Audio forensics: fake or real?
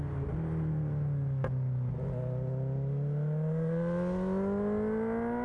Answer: real